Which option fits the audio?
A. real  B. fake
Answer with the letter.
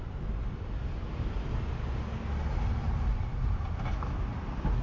A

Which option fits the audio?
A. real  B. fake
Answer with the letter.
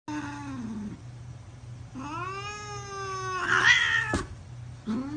A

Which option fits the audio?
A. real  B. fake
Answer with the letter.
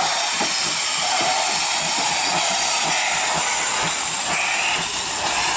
A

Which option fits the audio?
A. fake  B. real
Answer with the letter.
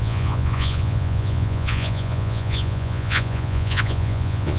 A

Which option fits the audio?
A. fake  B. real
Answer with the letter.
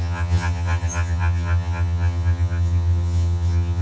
A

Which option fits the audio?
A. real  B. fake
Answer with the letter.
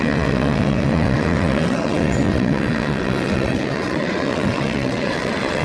B